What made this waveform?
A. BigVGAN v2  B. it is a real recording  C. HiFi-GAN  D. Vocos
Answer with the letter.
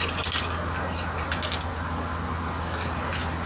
B